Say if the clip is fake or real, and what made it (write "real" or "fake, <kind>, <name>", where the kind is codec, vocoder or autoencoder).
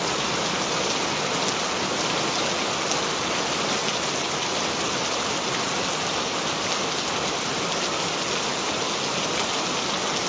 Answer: real